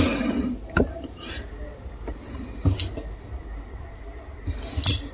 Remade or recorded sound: recorded